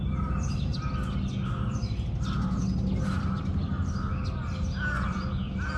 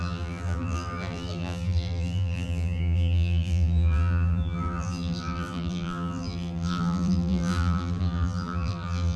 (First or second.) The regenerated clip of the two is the second